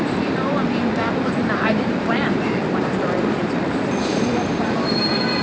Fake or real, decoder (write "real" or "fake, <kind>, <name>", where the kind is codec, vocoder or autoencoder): fake, vocoder, BigVGAN v2